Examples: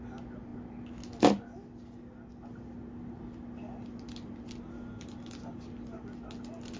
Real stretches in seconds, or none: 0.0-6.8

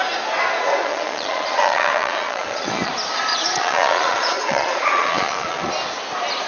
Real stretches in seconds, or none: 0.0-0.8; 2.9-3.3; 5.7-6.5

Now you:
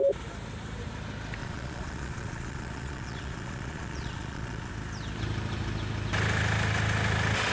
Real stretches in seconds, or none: 0.0-1.4; 4.7-7.5

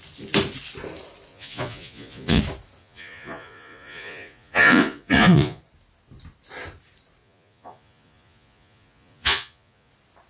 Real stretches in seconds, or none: 0.0-1.3; 2.4-2.8; 5.6-7.2; 9.9-10.3